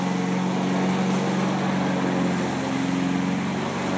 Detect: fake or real real